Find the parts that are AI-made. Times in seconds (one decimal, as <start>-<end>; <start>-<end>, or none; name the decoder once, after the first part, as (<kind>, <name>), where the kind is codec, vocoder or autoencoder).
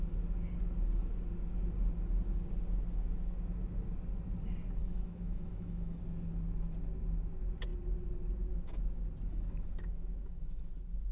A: 4.8-6.0 (autoencoder, DAC-VAE); 9.3-10.6